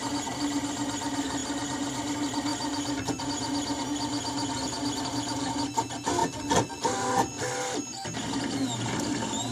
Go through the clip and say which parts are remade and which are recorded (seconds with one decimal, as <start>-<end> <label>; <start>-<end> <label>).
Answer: 0.0-6.2 remade; 6.2-7.1 recorded; 7.1-9.5 remade